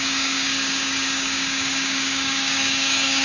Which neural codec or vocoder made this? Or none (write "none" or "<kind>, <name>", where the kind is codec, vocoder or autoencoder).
codec, DAC